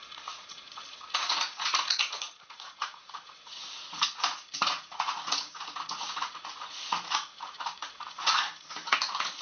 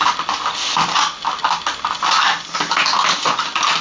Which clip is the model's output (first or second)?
first